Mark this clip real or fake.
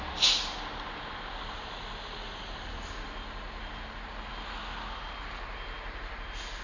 real